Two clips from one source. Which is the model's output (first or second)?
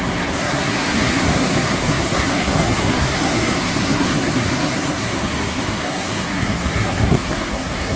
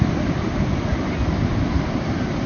first